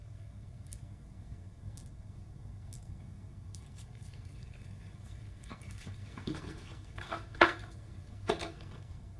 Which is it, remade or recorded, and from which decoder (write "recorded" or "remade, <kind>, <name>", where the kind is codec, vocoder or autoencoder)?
remade, codec, SNAC